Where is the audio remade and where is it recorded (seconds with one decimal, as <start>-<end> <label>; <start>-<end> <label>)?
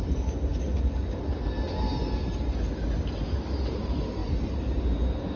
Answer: 0.0-5.4 recorded